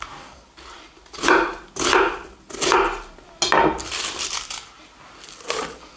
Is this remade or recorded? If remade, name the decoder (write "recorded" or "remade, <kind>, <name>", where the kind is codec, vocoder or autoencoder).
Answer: recorded